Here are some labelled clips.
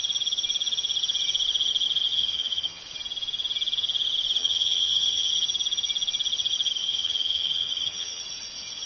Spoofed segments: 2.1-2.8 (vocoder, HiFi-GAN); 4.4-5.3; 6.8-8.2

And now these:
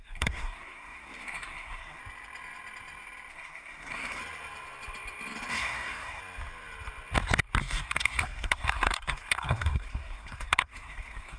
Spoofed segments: 0.0-2.0 (codec, SNAC); 3.3-4.2; 5.5-6.2; 7.6-11.4

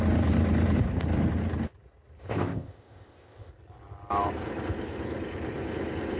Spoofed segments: 2.2-3.5 (codec, ZipCodec)

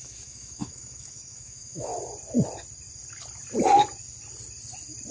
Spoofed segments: 0.0-1.9 (autoencoder, DAC-VAE)

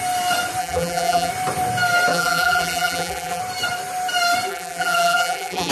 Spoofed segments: 0.6-1.3 (vocoder, BigVGAN v2); 2.1-3.4; 4.5-5.7